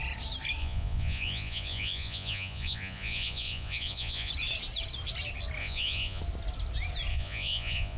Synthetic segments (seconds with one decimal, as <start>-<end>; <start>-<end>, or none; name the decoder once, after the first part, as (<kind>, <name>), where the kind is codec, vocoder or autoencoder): 0.6-4.3 (vocoder, Vocos); 5.6-6.2; 7.1-8.0